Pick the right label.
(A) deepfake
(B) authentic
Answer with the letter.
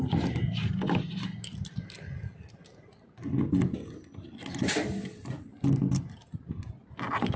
B